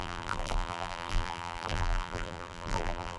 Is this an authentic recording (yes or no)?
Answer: no